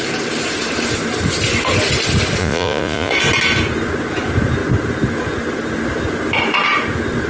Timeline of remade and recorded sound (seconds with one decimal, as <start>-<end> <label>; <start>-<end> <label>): 0.0-2.4 recorded; 2.4-3.1 remade; 3.1-7.3 recorded